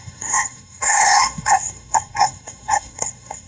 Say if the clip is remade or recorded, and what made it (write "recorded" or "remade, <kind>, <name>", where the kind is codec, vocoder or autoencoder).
remade, codec, SNAC